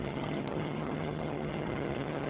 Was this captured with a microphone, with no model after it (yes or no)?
no